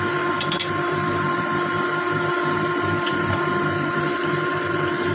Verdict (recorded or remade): remade